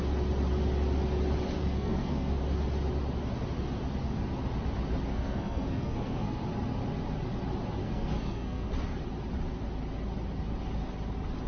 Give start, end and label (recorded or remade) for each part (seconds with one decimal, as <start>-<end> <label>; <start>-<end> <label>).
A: 0.0-1.6 recorded; 1.6-2.4 remade; 2.4-5.1 recorded; 5.1-6.4 remade; 6.4-7.8 recorded; 7.8-8.7 remade; 8.7-11.5 recorded

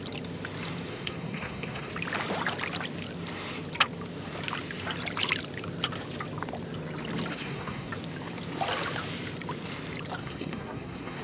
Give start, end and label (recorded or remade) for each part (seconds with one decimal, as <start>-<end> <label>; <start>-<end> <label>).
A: 0.0-0.9 recorded; 0.9-1.9 remade; 1.9-7.3 recorded; 7.3-7.9 remade; 7.9-10.2 recorded; 10.2-11.2 remade

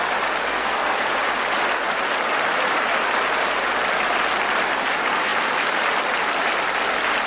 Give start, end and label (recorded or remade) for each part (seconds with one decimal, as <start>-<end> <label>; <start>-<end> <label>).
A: 0.0-0.4 recorded; 0.4-1.1 remade; 1.1-7.3 recorded